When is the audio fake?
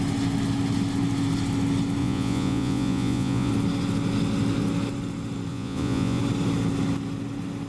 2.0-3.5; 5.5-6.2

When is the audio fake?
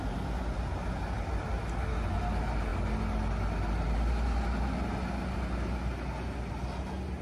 none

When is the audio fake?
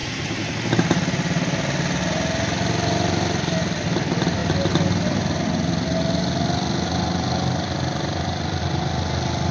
none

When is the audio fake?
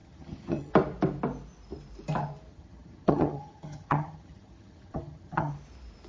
0.0-0.7; 2.5-5.5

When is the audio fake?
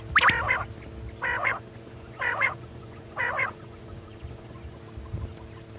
1.3-4.8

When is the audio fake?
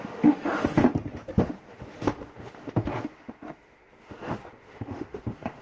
0.0-0.8; 1.4-5.6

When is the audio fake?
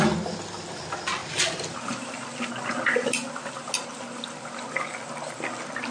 none